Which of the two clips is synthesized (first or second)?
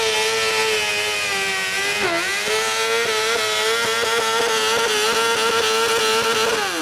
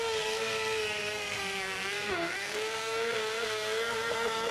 second